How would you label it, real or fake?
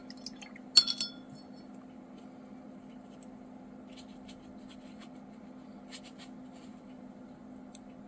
real